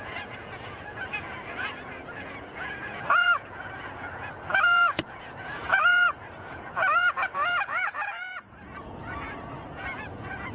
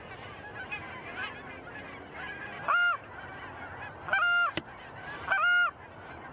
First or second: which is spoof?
first